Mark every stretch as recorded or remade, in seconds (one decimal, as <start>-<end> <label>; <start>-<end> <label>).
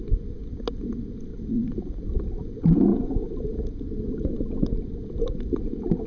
0.0-1.3 recorded; 1.3-2.3 remade; 2.3-2.9 recorded; 2.9-5.6 remade; 5.6-6.1 recorded